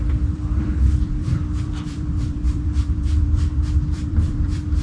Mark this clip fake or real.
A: fake